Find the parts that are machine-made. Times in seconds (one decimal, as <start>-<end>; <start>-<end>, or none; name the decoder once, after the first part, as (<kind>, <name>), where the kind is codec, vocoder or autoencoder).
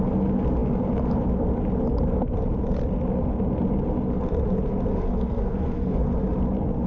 4.9-6.0 (codec, SNAC)